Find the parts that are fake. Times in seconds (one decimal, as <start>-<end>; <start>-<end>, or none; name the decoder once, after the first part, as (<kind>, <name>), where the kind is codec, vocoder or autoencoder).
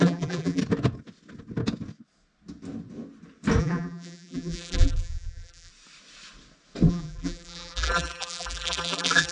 0.0-0.6 (vocoder, BigVGAN v2); 3.6-5.7; 6.9-9.3